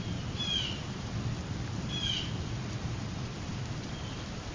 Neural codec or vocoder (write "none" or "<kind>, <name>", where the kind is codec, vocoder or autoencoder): vocoder, BigVGAN v2